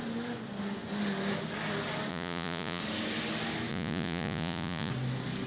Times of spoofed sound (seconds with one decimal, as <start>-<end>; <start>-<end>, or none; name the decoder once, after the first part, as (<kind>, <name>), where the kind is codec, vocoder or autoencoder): 2.1-2.8 (vocoder, Vocos); 3.7-4.9